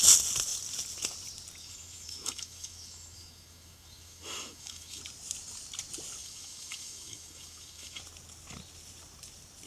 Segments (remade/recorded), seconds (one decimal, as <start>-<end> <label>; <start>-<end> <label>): 0.0-1.6 recorded; 1.6-5.0 remade; 5.0-6.2 recorded; 6.2-8.0 remade; 8.0-9.7 recorded